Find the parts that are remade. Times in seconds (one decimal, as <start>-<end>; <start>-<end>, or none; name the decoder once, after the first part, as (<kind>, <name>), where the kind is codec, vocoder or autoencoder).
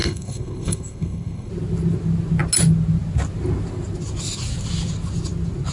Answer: 0.0-1.5 (codec, SNAC)